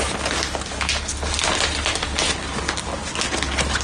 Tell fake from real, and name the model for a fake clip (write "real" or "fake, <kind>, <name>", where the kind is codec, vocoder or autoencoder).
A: real